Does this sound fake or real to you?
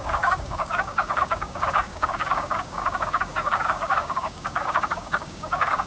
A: fake